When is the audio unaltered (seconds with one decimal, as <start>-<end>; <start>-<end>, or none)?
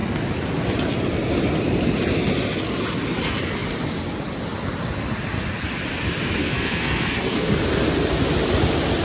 0.0-6.4; 7.5-9.0